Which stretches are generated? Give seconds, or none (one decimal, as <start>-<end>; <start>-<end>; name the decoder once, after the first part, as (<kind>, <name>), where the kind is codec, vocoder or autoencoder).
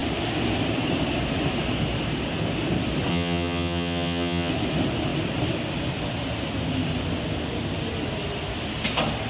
3.1-4.5 (vocoder, HiFi-GAN)